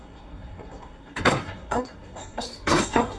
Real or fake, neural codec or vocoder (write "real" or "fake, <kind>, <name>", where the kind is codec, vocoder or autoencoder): fake, codec, SNAC